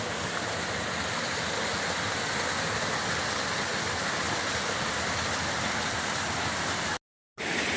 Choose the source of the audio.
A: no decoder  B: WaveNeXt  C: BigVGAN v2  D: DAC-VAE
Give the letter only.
A